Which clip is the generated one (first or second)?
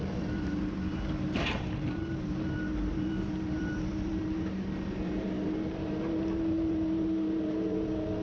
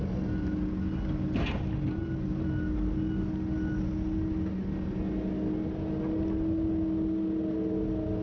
first